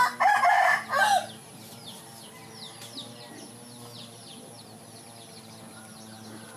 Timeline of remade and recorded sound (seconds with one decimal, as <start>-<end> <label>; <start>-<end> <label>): 0.0-6.6 recorded